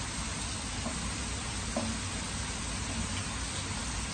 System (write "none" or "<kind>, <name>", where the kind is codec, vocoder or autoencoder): none